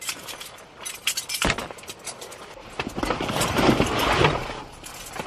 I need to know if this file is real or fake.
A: real